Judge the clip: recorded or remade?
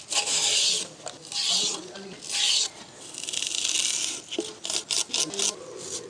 recorded